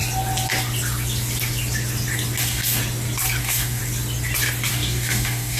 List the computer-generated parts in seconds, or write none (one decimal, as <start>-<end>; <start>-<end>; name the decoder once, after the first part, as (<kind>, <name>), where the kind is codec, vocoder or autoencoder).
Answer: 2.4-2.8 (codec, DAC); 3.4-3.8; 4.7-5.6